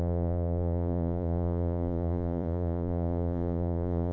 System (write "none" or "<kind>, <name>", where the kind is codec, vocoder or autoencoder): vocoder, Vocos